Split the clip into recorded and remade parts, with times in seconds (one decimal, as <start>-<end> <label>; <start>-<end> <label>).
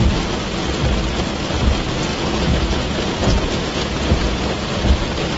0.0-2.1 recorded; 2.1-4.5 remade; 4.5-5.4 recorded